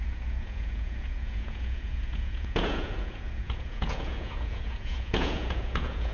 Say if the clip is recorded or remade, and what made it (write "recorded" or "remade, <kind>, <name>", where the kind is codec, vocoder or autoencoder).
remade, vocoder, Vocos